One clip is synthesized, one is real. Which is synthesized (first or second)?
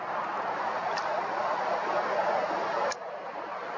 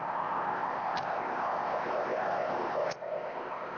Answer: second